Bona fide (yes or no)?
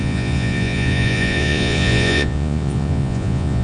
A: no